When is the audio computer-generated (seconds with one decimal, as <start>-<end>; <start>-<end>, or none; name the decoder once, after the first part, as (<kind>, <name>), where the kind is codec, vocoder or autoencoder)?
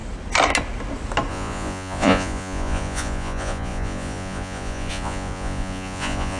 1.3-6.4 (vocoder, Vocos)